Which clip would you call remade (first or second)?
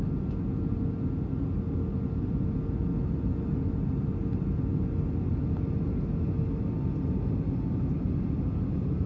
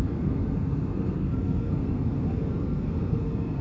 second